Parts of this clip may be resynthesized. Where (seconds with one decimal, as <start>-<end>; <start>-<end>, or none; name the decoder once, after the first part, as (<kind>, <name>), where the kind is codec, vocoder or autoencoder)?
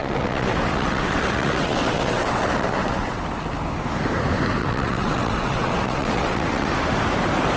0.0-3.2 (vocoder, WaveNeXt); 4.6-6.7